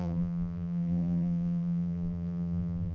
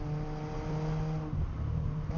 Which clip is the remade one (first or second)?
first